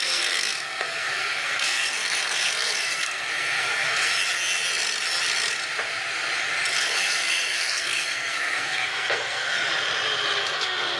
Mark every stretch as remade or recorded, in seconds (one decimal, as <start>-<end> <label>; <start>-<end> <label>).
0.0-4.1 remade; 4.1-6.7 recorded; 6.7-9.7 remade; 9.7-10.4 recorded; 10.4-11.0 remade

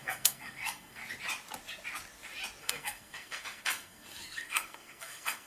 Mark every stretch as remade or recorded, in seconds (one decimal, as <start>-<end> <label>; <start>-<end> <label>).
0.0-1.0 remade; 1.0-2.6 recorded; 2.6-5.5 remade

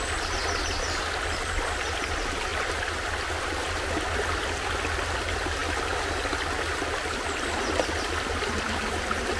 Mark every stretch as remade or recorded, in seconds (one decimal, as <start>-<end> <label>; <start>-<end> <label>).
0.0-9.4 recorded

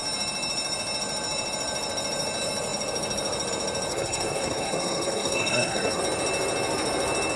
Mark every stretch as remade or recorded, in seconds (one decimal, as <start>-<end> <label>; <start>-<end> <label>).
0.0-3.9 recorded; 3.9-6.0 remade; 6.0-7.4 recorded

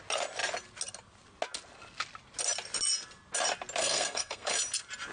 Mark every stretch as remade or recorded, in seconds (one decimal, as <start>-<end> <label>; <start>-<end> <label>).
0.0-3.8 recorded; 3.8-4.5 remade; 4.5-5.1 recorded

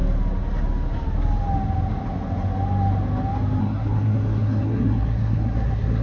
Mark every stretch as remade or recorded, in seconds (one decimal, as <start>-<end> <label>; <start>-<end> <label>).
0.0-3.6 recorded; 3.6-6.0 remade